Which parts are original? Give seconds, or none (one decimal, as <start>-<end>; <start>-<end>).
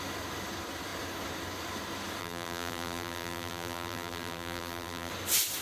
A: 0.0-2.2; 5.1-5.6